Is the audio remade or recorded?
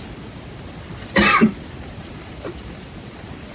remade